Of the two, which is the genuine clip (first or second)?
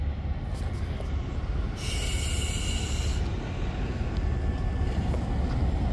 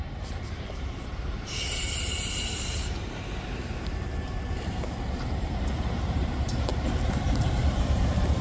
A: first